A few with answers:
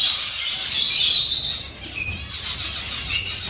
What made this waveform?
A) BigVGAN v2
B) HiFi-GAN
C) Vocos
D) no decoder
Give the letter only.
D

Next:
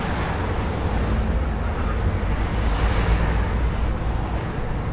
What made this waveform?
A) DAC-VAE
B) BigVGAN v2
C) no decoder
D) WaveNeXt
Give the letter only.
C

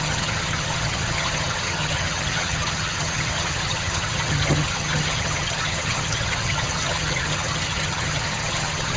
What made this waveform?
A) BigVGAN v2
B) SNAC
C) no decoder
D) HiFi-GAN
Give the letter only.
D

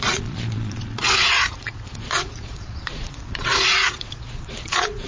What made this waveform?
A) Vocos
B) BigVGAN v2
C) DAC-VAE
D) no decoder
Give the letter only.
A